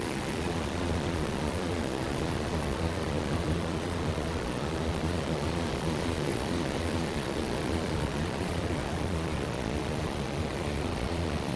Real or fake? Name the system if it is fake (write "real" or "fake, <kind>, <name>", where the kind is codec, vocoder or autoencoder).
fake, vocoder, Vocos